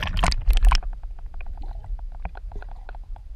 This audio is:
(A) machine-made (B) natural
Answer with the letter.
B